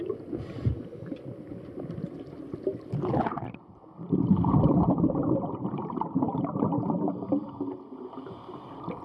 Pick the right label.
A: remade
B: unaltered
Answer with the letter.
B